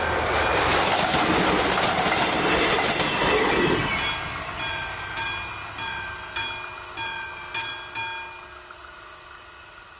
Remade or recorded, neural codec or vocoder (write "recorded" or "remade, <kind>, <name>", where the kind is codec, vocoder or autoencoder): recorded